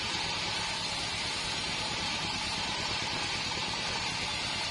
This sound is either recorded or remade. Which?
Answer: remade